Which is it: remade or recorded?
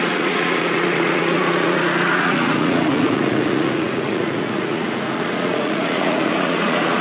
remade